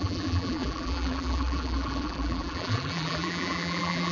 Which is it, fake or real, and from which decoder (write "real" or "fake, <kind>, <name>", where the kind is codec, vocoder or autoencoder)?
fake, vocoder, BigVGAN v2